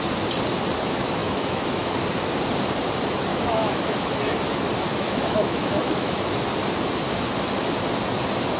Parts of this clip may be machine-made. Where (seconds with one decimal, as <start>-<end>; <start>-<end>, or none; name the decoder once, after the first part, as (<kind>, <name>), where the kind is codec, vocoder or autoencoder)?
1.2-1.9 (autoencoder, DAC-VAE); 3.3-4.1; 4.9-6.3